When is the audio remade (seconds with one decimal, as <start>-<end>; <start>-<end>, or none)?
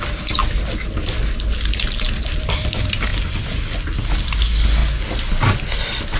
0.0-0.4; 2.0-3.1; 3.7-4.8; 5.3-6.2